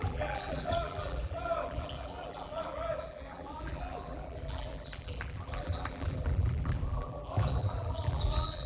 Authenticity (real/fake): fake